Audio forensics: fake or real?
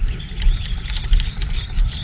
real